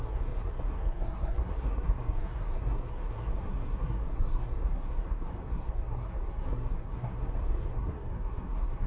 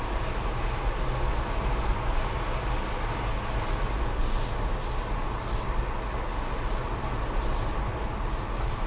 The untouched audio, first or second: second